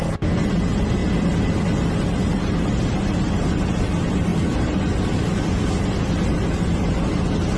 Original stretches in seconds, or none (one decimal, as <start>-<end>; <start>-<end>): 0.0-7.6